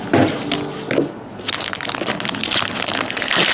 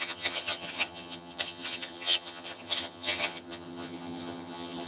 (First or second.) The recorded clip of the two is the first